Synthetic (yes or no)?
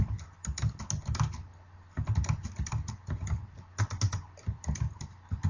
no